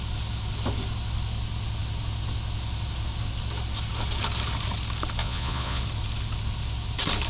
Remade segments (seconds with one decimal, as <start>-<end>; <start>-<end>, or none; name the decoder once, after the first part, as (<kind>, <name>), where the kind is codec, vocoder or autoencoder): 5.2-5.8 (vocoder, Vocos)